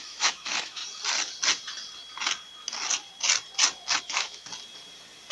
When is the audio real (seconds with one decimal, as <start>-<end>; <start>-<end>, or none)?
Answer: 0.8-4.0; 4.5-5.3

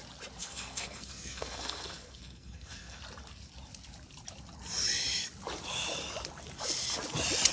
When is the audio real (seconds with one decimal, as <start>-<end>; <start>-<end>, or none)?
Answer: 0.0-0.4; 3.0-7.5